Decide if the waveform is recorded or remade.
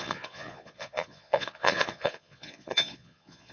remade